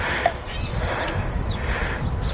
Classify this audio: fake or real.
real